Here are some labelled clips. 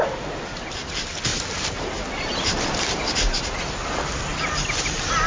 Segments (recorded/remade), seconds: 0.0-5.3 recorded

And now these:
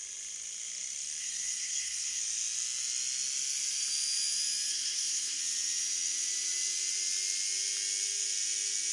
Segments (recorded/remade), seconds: 0.0-1.2 recorded; 1.2-2.2 remade; 2.2-4.7 recorded; 4.7-5.4 remade; 5.4-8.9 recorded

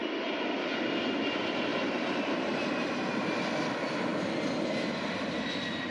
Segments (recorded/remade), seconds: 0.0-1.7 recorded; 1.7-3.4 remade; 3.4-5.9 recorded

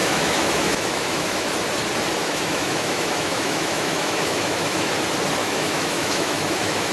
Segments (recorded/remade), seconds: 0.0-1.5 remade; 1.5-2.2 recorded; 2.2-4.9 remade; 4.9-5.4 recorded; 5.4-6.9 remade

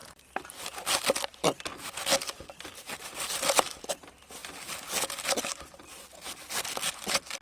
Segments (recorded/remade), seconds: 0.0-7.4 recorded

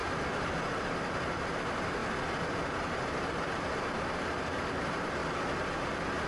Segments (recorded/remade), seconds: 0.0-0.8 recorded; 0.8-2.0 remade; 2.0-2.7 recorded; 2.7-5.2 remade; 5.2-6.3 recorded

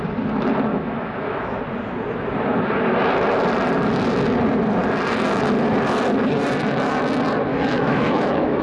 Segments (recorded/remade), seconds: 0.0-0.7 recorded; 0.7-1.6 remade; 1.6-7.5 recorded; 7.5-8.6 remade

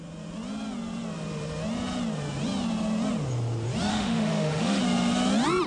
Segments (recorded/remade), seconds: 0.0-3.9 recorded; 3.9-4.8 remade; 4.8-5.7 recorded